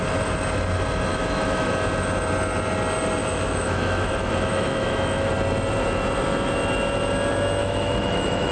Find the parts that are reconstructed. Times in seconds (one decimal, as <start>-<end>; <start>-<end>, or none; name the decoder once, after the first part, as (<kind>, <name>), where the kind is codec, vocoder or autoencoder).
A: 1.1-1.7 (autoencoder, DAC-VAE); 3.2-5.3; 7.6-8.5